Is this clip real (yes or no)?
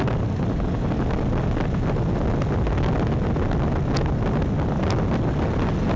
yes